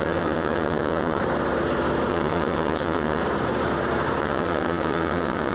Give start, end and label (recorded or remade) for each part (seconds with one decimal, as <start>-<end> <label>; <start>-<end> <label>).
0.0-1.2 remade; 1.2-2.1 recorded; 2.1-3.2 remade; 3.2-4.2 recorded; 4.2-5.5 remade